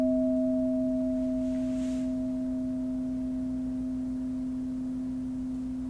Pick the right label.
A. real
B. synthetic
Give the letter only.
A